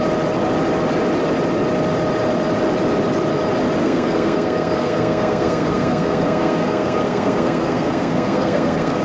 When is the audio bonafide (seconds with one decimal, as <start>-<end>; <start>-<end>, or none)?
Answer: 0.0-3.8

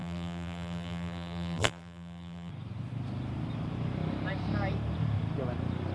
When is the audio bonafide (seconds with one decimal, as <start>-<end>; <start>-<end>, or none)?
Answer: 2.5-5.9

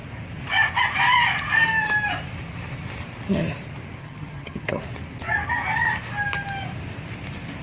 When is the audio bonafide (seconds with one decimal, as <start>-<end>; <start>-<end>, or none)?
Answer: 0.0-4.0; 4.8-7.6